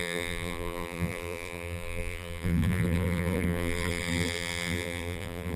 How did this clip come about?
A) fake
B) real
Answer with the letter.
A